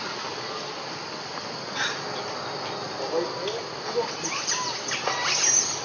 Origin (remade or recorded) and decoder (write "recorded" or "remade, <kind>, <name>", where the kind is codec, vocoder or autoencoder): recorded